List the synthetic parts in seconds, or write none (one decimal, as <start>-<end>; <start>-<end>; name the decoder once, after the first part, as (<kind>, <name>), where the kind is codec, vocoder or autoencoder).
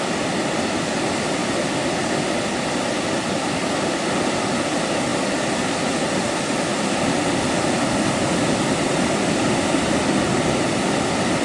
none